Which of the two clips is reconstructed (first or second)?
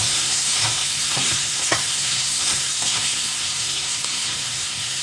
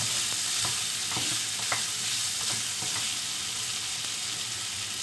first